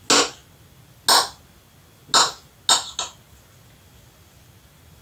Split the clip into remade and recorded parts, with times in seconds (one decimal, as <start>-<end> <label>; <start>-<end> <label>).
0.0-5.0 recorded